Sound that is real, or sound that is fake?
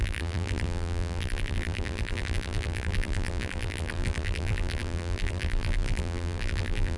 fake